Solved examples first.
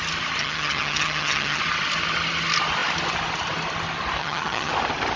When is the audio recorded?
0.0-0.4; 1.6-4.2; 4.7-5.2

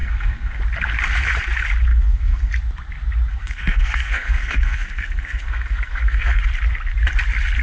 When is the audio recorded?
0.6-1.9; 2.5-3.3; 6.4-7.6

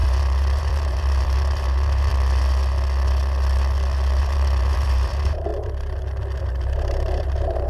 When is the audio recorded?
2.1-4.2; 5.5-6.4

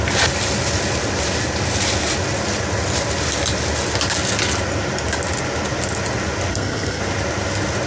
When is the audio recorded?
0.0-6.5; 7.0-7.9

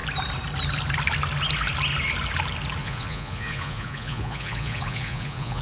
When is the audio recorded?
0.0-2.8